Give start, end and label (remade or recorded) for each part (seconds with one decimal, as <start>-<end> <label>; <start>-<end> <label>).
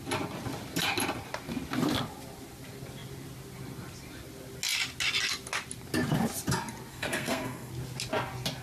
0.0-6.9 recorded; 6.9-7.7 remade; 7.7-8.6 recorded